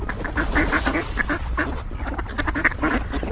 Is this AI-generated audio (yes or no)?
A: no